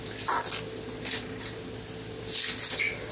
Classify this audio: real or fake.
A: real